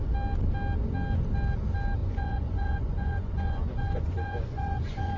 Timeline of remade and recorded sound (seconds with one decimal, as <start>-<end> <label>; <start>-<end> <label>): 0.0-2.0 recorded; 2.0-5.2 remade